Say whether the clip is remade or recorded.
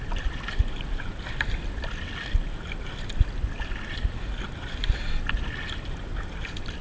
recorded